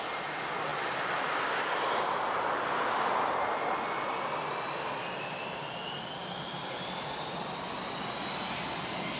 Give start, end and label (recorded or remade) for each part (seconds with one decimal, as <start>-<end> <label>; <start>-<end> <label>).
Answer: 0.0-9.2 recorded